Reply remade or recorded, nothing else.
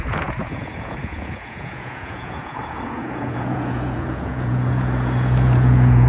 remade